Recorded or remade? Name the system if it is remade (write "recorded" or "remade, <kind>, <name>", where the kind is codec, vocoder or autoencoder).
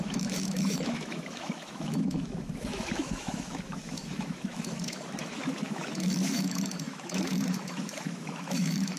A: remade, autoencoder, DAC-VAE